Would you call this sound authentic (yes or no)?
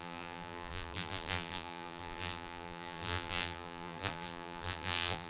no